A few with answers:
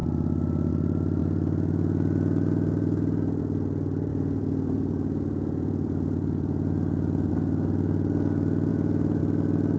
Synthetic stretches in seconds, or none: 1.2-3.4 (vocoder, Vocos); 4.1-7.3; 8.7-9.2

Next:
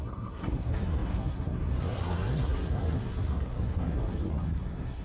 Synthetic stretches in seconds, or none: 0.0-5.0 (codec, SNAC)

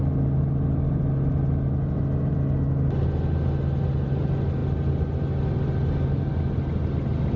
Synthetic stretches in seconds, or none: none

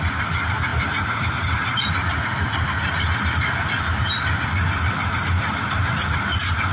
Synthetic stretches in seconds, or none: none